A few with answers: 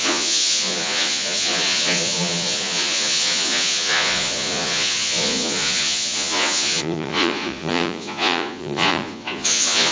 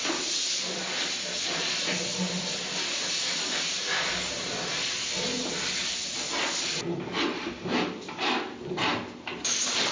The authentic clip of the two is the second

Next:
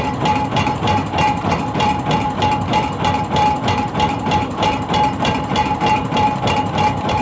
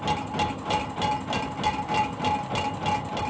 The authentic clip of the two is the second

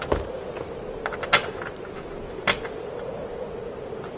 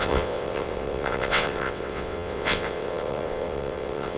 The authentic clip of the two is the first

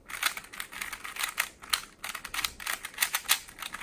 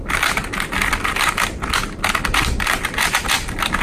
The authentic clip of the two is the first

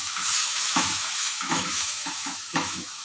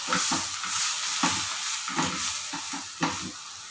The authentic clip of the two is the second